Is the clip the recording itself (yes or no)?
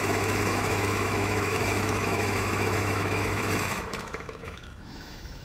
no